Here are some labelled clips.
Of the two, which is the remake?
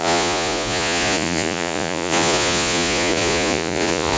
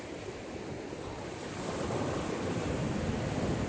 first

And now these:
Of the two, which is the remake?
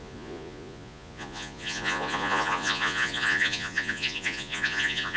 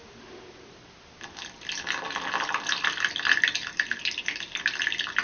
first